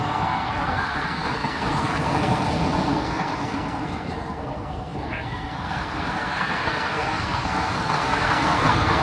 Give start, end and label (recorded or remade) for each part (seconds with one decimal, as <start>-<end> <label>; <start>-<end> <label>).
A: 0.0-9.0 remade